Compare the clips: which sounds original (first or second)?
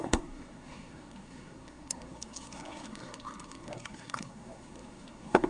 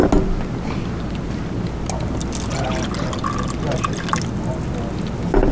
second